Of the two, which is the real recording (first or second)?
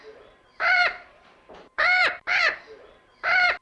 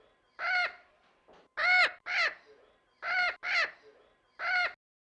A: second